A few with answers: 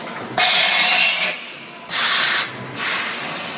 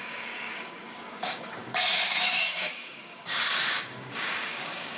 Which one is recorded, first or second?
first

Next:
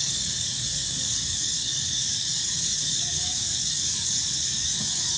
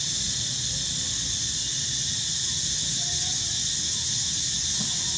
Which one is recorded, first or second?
second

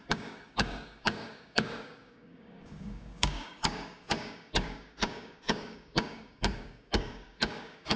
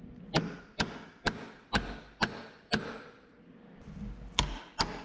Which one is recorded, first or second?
second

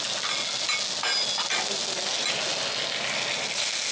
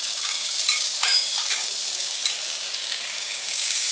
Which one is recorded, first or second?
first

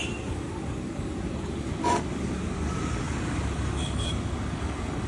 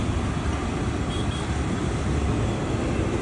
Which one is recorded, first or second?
second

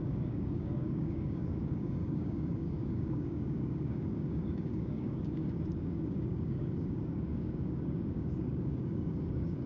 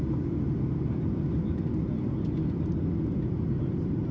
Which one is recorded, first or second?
second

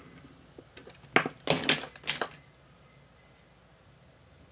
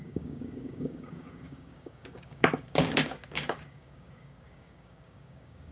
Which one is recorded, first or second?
first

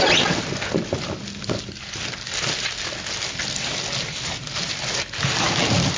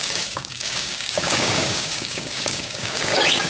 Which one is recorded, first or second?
first